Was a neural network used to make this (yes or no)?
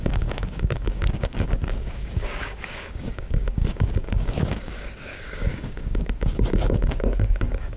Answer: yes